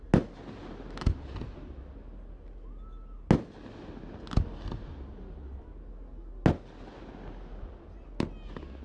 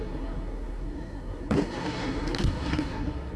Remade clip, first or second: second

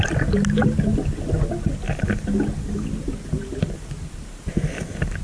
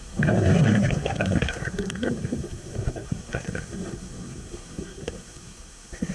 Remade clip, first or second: second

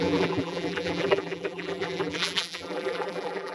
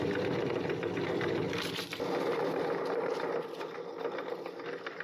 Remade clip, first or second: first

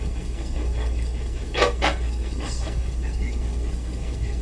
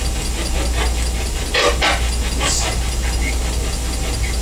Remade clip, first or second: first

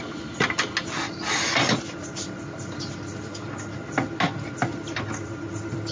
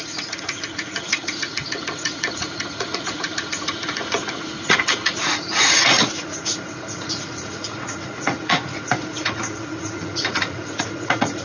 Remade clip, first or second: second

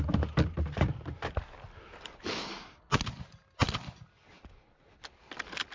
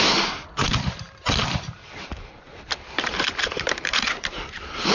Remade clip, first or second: second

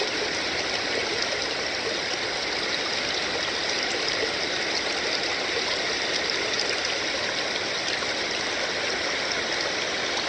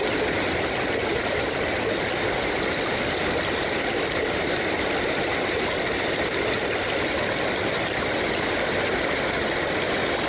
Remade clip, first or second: second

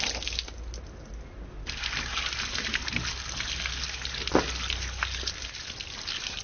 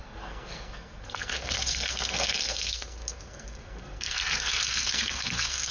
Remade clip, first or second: second